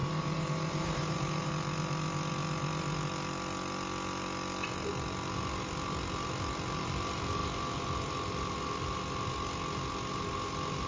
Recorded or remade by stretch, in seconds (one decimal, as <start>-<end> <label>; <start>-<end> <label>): 0.0-1.5 remade; 1.5-10.9 recorded